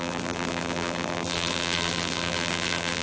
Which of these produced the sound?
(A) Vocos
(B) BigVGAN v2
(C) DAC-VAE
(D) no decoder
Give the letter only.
B